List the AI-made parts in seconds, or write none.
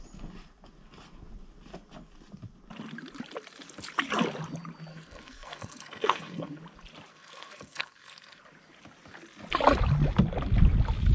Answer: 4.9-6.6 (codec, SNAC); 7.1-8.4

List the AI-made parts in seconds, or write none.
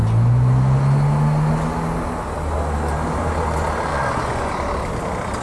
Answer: 3.9-4.5 (vocoder, Vocos)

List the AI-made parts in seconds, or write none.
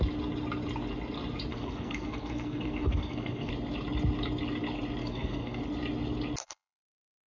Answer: 1.5-3.5 (codec, SNAC); 5.0-5.6; 6.4-7.3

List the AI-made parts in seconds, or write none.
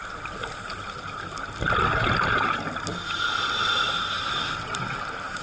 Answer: none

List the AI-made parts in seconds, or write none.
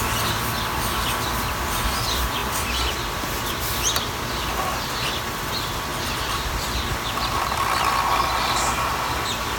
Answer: 2.4-5.3 (vocoder, BigVGAN v2); 5.9-6.8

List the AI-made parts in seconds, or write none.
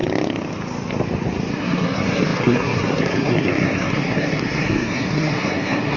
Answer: 1.5-6.0 (codec, SNAC)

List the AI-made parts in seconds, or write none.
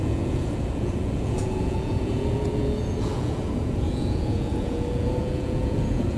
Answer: 0.0-6.2 (vocoder, Vocos)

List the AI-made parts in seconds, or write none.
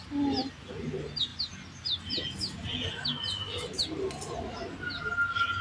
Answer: none